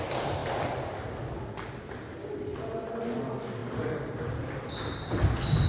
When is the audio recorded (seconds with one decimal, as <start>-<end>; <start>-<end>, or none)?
0.0-5.7